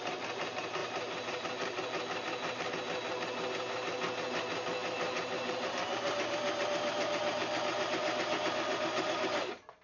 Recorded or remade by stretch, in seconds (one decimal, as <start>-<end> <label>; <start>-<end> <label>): 0.0-0.8 recorded; 0.8-2.7 remade; 2.7-4.8 recorded; 4.8-5.7 remade; 5.7-9.8 recorded

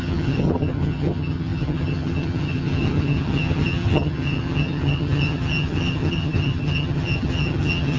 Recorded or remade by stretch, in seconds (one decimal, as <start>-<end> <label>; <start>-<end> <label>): 0.0-8.0 remade